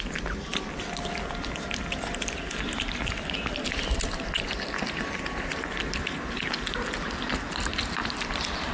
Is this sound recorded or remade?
recorded